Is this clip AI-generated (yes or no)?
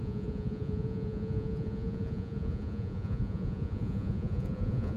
yes